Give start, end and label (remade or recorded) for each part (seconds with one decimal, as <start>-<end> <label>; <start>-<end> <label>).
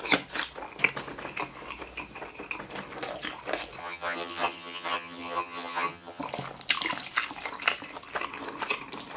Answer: 0.0-3.8 recorded; 3.8-6.2 remade; 6.2-9.2 recorded